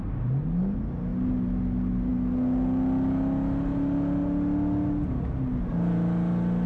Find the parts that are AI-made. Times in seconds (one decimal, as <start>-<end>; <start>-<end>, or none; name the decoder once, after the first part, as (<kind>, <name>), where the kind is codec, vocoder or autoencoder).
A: none